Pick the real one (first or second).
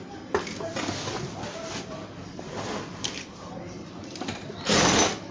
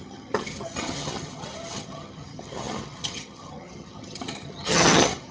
first